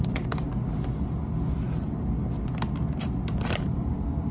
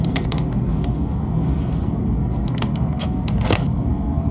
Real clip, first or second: first